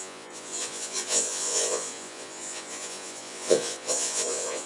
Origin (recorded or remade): remade